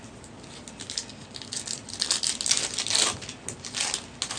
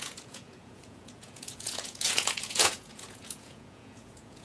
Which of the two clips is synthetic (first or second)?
second